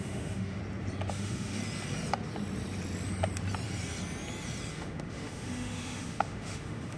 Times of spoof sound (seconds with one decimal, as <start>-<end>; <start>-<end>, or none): 0.0-0.6; 1.1-1.6; 4.7-7.0